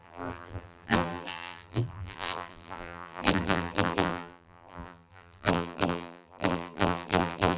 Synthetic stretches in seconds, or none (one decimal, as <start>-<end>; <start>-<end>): 0.0-7.6